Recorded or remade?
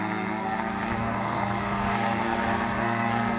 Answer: remade